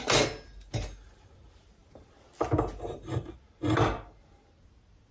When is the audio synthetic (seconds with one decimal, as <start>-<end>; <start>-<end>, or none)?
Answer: none